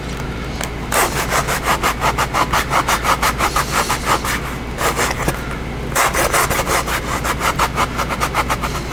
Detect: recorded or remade recorded